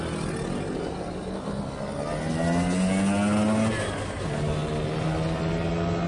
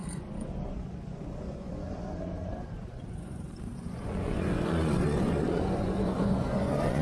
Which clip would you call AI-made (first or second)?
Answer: second